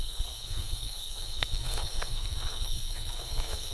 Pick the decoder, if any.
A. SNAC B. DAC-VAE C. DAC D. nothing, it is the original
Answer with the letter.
A